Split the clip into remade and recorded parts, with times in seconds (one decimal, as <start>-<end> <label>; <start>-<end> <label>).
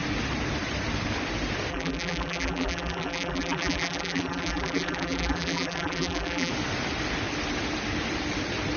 0.0-1.7 recorded; 1.7-6.5 remade; 6.5-8.8 recorded